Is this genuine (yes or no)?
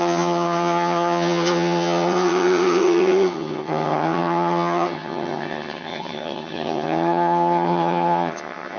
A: no